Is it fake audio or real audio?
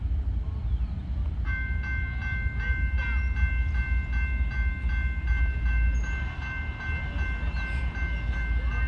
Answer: real